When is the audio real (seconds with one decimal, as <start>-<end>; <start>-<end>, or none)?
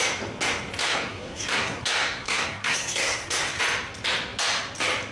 0.0-0.8; 3.6-5.1